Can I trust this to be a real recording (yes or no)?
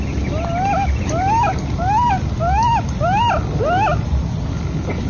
yes